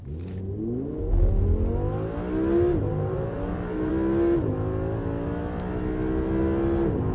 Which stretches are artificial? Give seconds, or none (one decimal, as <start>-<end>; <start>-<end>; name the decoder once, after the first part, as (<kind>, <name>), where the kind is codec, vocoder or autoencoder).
2.9-3.9 (vocoder, BigVGAN v2)